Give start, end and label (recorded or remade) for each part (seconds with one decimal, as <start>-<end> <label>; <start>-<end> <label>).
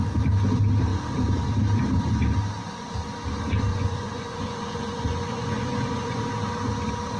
0.0-3.7 recorded; 3.7-6.2 remade; 6.2-7.2 recorded